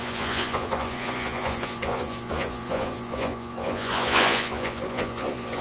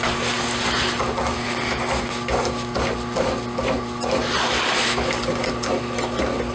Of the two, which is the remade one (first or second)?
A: first